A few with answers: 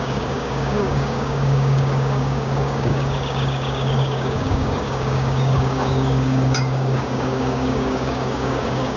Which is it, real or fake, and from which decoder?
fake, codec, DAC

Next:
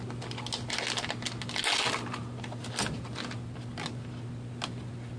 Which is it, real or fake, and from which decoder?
real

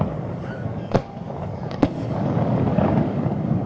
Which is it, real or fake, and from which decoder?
fake, codec, DAC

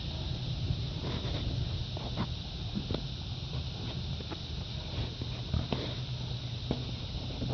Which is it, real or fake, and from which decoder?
real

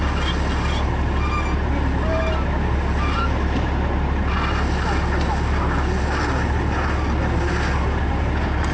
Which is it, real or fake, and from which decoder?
real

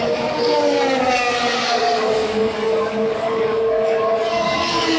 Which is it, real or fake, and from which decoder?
fake, codec, DAC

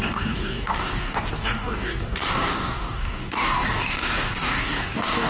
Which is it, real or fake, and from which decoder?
fake, codec, DAC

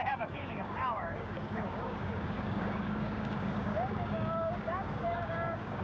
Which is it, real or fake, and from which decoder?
fake, codec, DAC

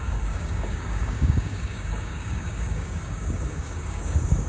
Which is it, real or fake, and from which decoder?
fake, codec, DAC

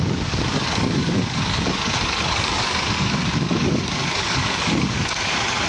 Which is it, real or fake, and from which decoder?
fake, codec, DAC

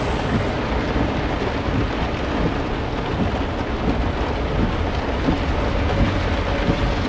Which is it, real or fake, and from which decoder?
real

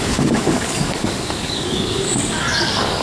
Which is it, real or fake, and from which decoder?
fake, codec, DAC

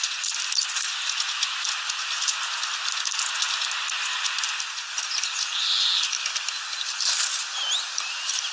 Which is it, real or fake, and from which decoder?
real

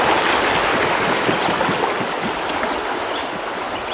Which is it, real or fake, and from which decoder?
real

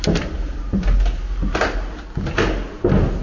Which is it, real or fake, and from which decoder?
real